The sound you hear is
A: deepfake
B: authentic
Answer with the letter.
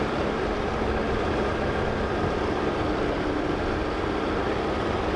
A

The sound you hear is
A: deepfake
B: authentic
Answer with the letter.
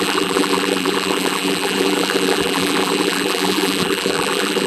A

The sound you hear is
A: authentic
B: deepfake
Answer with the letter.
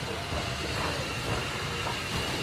A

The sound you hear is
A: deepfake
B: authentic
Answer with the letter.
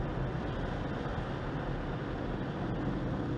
B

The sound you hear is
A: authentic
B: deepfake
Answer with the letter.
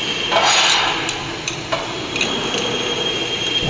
A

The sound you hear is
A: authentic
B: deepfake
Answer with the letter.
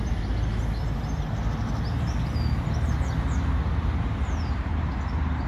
A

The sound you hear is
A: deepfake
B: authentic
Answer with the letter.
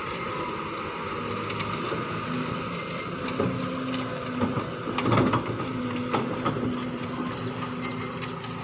B